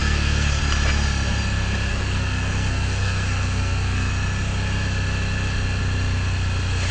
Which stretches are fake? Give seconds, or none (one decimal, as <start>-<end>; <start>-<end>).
0.0-0.6; 1.9-4.1